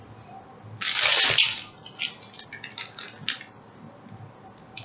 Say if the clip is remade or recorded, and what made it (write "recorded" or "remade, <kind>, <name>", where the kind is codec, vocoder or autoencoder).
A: recorded